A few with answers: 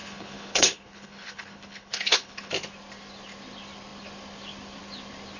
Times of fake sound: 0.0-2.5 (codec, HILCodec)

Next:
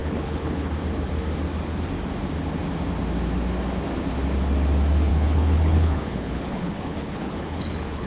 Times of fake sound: 0.0-0.7 (codec, HILCodec); 5.1-8.1